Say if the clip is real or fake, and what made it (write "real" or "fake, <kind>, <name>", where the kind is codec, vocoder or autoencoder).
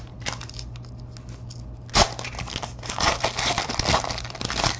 real